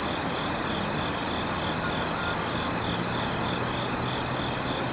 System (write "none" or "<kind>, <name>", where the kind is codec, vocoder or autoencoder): none